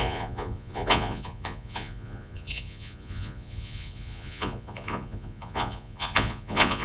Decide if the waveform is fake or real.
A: fake